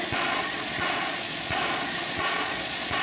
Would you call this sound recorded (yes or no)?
no